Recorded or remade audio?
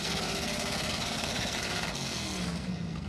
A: remade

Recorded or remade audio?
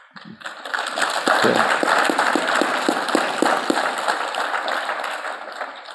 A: recorded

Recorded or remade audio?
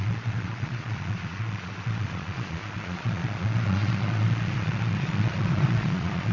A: remade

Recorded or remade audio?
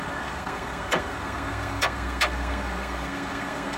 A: remade